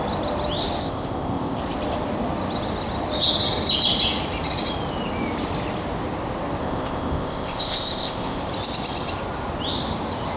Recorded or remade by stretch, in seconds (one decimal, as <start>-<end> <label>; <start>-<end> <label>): 0.0-0.8 recorded; 0.8-1.6 remade; 1.6-6.6 recorded; 6.6-8.4 remade; 8.4-10.4 recorded